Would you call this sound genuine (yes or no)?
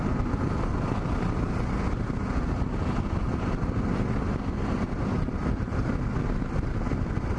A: yes